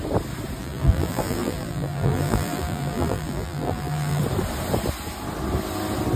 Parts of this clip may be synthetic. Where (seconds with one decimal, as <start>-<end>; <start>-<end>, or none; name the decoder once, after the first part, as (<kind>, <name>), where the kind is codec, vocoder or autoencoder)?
0.6-4.2 (vocoder, BigVGAN v2)